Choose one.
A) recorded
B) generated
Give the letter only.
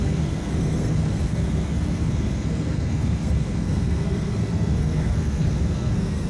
B